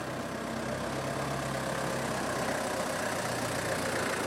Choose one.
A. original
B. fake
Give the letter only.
A